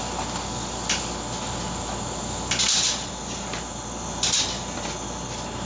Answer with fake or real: real